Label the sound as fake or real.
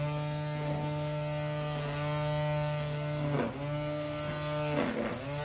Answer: real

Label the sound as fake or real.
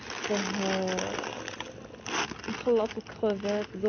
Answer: real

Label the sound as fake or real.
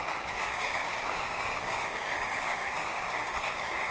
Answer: fake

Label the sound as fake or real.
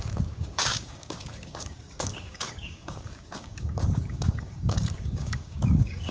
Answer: fake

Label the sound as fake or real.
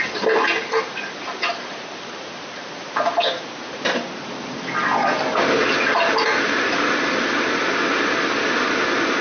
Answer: real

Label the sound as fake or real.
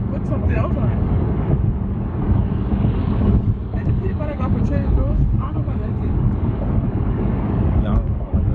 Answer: fake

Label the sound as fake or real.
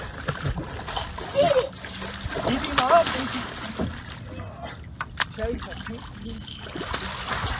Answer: real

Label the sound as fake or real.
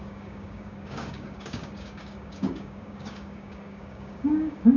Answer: fake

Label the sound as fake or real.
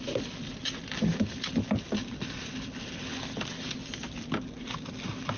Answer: real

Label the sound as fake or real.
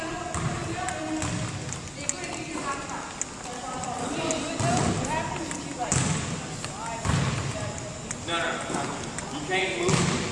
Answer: real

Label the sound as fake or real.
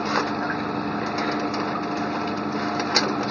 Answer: real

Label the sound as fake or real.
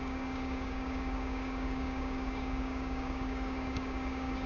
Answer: fake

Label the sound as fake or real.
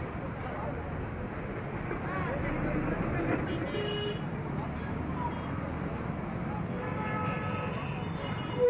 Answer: real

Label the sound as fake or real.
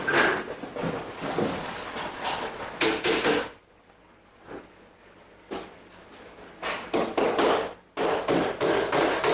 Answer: real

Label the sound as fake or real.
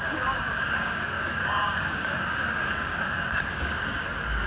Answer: fake